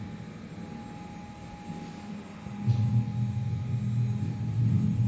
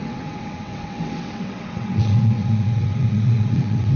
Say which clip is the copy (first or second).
second